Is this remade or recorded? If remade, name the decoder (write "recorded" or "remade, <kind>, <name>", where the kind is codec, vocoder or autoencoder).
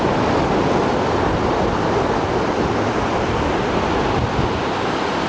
recorded